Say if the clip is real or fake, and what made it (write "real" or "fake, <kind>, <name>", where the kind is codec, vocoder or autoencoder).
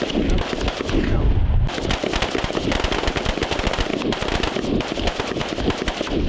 real